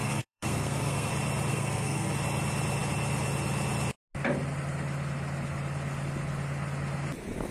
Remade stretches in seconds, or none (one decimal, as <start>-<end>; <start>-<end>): 0.0-1.1; 1.5-2.1